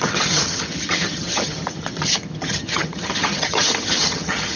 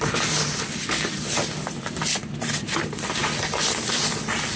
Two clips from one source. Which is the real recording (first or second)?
second